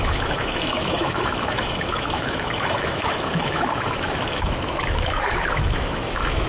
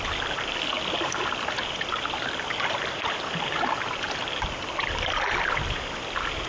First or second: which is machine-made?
first